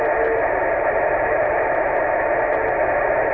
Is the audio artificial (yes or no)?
no